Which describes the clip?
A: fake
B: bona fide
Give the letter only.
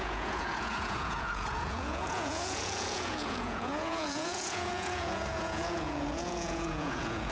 A